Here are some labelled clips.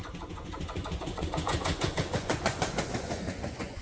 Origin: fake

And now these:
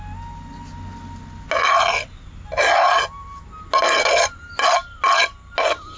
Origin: real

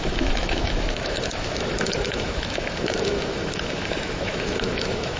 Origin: fake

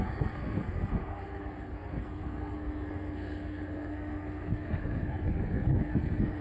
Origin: fake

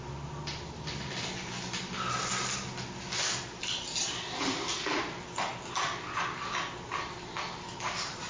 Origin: real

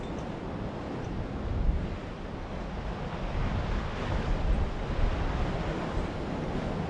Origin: fake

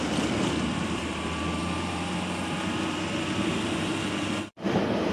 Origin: fake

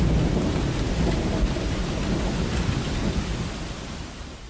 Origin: real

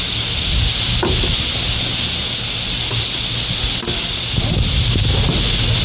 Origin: real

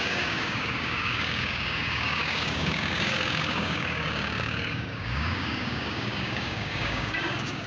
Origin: fake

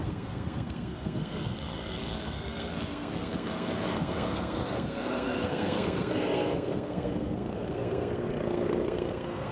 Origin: fake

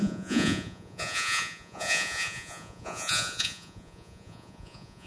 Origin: fake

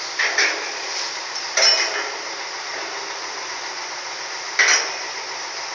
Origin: real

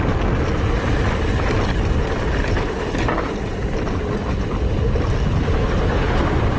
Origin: real